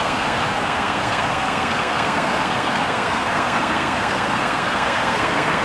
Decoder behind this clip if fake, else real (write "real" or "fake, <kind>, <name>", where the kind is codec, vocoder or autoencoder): fake, codec, SNAC